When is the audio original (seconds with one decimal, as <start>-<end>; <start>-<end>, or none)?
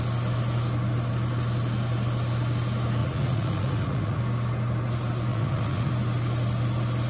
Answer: 0.0-3.0; 4.2-5.3; 5.9-7.1